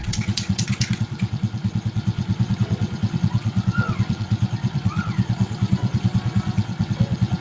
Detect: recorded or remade remade